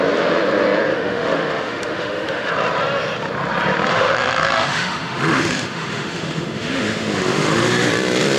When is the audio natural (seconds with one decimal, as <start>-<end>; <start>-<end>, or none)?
0.0-0.9; 2.5-3.9; 7.9-8.4